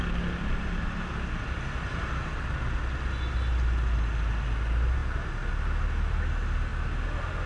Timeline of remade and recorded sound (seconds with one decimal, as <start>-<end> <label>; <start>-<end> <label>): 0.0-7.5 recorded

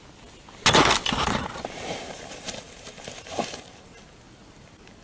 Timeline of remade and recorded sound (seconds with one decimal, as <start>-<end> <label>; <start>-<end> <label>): 0.0-1.0 recorded; 1.0-4.0 remade; 4.0-5.0 recorded

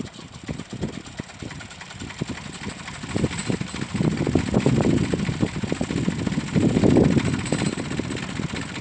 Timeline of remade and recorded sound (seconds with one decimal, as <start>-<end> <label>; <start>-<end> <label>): 0.0-8.8 recorded

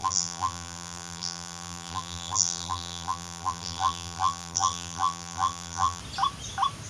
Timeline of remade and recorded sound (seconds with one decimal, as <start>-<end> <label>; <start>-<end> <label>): 0.0-6.0 remade; 6.0-6.9 recorded

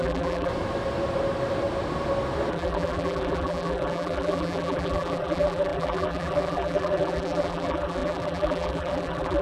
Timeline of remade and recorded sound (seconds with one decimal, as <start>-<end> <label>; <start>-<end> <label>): 0.0-0.5 remade; 0.5-2.5 recorded; 2.5-9.4 remade

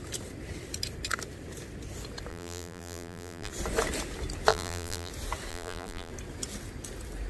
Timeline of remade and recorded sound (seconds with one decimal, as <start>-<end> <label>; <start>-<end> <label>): 0.0-2.3 recorded; 2.3-3.5 remade; 3.5-4.5 recorded; 4.5-5.1 remade; 5.1-5.5 recorded; 5.5-6.1 remade; 6.1-7.3 recorded